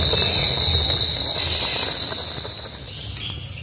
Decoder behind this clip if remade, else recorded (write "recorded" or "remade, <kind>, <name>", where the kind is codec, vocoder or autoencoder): recorded